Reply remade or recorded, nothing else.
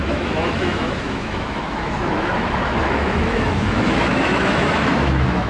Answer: remade